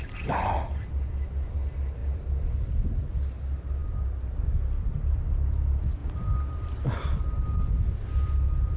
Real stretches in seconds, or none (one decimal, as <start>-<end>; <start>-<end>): 0.0-2.0; 3.0-3.8; 4.5-6.0; 6.7-8.8